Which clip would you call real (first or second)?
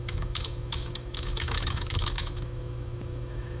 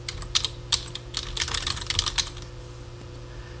second